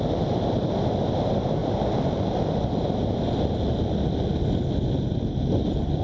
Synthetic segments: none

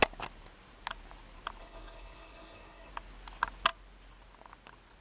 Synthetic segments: 1.6-2.9 (codec, SNAC)